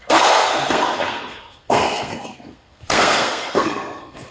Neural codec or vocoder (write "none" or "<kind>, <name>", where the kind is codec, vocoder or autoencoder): codec, SNAC